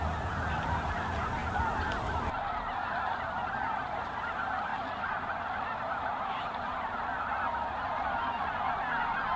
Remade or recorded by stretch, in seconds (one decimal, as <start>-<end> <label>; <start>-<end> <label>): 0.0-9.4 recorded